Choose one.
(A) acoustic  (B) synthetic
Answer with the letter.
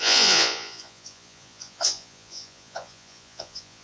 B